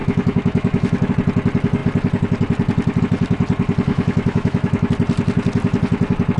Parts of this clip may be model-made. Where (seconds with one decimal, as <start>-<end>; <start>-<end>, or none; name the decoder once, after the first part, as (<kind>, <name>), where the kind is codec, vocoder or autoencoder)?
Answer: 0.0-1.1 (autoencoder, DAC-VAE); 3.9-4.9